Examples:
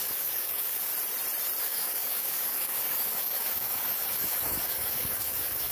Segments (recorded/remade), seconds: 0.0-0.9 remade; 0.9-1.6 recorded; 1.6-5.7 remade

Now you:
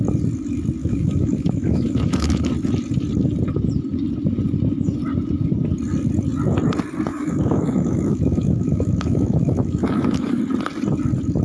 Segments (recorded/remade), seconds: 0.0-0.8 recorded; 0.8-2.5 remade; 2.5-7.1 recorded; 7.1-10.4 remade; 10.4-11.4 recorded

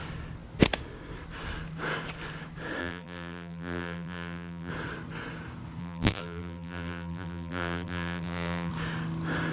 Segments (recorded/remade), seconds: 0.0-2.8 recorded; 2.8-4.7 remade; 4.7-5.8 recorded; 5.8-8.7 remade; 8.7-9.5 recorded